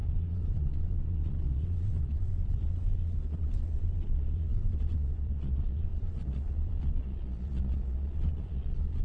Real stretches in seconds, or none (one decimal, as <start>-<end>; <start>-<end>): none